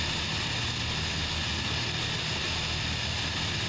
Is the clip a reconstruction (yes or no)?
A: no